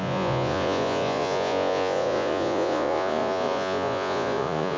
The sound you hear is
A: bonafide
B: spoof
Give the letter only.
B